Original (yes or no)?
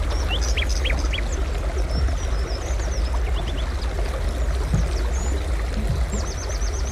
yes